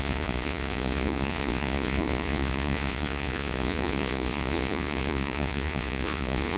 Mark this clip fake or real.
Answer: fake